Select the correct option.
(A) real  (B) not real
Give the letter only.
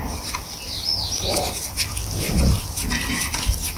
A